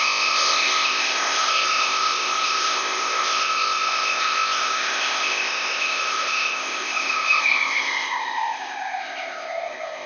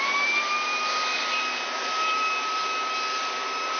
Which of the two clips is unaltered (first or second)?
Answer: second